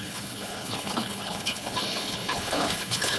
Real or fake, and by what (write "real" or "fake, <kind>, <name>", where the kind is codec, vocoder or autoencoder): fake, codec, HILCodec